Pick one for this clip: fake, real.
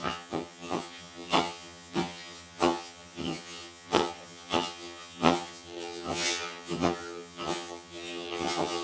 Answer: fake